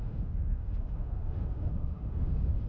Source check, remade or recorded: remade